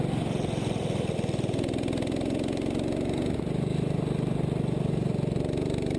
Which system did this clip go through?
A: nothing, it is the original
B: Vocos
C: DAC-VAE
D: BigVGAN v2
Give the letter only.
A